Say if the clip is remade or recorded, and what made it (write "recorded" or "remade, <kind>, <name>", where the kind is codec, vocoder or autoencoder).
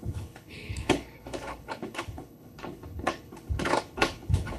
remade, codec, HILCodec